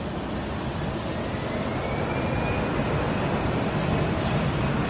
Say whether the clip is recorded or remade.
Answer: recorded